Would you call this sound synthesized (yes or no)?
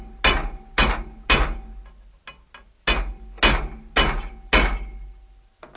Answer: no